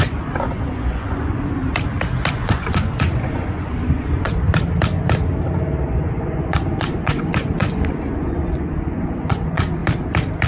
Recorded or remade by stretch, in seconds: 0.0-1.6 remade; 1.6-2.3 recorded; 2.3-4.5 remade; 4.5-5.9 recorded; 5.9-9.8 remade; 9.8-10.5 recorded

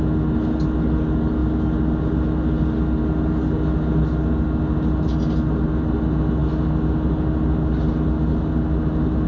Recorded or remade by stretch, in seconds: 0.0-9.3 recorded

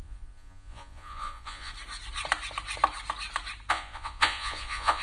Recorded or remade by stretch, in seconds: 0.0-1.7 remade; 1.7-3.7 recorded; 3.7-5.0 remade

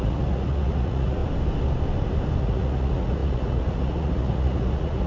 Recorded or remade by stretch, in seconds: 0.0-1.2 remade; 1.2-2.4 recorded; 2.4-5.1 remade

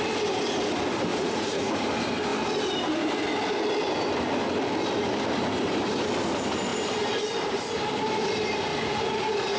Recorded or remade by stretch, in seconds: 0.0-1.1 recorded; 1.1-1.7 remade; 1.7-8.7 recorded; 8.7-9.6 remade

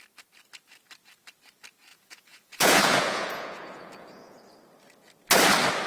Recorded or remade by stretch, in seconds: 0.0-1.9 recorded; 1.9-4.4 remade; 4.4-5.9 recorded

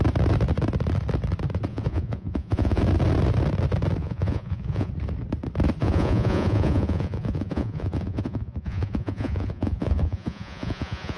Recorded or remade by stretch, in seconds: 0.0-1.7 recorded; 1.7-2.8 remade; 2.8-4.0 recorded; 4.0-4.9 remade; 4.9-5.8 recorded; 5.8-11.2 remade